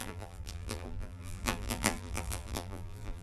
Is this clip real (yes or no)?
no